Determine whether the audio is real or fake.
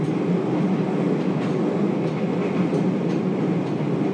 real